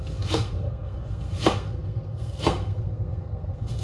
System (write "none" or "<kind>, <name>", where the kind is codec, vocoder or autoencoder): codec, SNAC